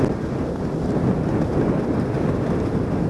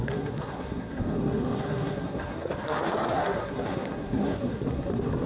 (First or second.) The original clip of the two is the first